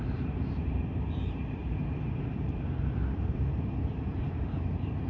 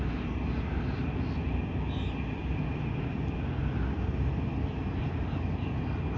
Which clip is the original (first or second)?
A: second